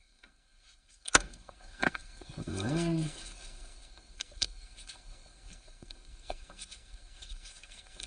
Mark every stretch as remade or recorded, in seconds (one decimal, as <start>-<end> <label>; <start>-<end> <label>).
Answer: 0.0-8.1 remade